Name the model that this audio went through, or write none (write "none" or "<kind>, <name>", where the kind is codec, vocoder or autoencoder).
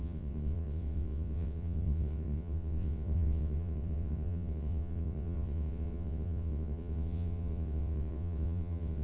vocoder, WaveNeXt